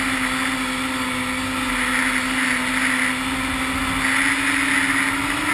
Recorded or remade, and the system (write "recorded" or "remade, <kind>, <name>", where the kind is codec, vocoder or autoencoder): recorded